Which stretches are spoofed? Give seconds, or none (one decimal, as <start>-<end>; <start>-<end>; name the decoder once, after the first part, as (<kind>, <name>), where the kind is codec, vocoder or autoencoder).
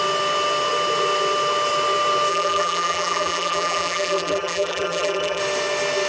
2.3-5.4 (vocoder, BigVGAN v2)